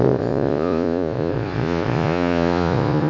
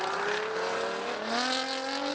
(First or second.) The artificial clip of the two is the first